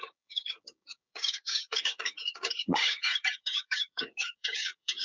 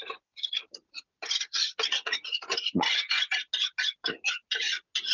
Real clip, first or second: second